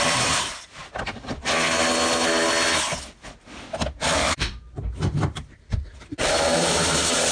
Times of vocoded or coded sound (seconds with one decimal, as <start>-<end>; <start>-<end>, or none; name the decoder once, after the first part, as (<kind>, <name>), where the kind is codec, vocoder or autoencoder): 0.0-0.8 (vocoder, BigVGAN v2); 4.0-7.3

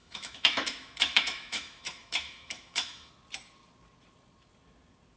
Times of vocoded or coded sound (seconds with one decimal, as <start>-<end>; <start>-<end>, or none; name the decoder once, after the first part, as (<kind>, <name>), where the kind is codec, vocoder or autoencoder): 0.0-3.1 (autoencoder, DAC-VAE)

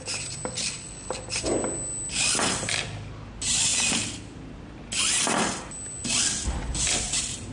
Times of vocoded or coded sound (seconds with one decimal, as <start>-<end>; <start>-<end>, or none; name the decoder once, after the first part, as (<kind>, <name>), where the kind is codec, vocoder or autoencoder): none

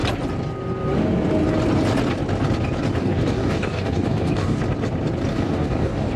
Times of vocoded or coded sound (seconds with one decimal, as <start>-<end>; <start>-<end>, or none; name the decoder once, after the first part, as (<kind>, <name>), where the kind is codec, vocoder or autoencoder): 3.0-4.6 (codec, DAC); 5.3-6.2

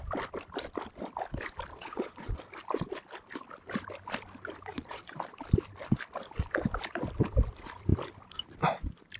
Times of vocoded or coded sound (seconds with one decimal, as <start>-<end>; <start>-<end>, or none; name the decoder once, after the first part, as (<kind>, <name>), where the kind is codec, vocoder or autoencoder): 1.7-2.4 (vocoder, Vocos); 4.7-5.2

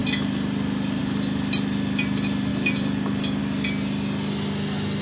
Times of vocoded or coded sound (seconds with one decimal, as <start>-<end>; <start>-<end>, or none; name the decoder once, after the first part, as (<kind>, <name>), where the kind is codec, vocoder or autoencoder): none